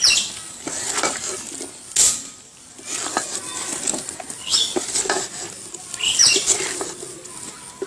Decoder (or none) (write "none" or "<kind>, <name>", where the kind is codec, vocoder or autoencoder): none